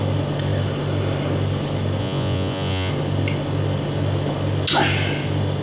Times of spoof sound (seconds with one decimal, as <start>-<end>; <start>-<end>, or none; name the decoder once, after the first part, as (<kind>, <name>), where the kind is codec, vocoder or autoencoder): 2.0-2.9 (vocoder, Vocos)